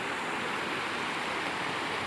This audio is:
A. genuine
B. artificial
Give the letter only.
A